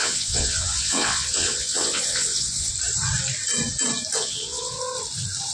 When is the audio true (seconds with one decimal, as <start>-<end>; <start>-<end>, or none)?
2.7-4.2; 4.8-5.5